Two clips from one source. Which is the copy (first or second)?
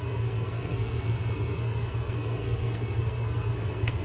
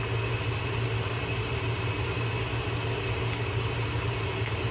first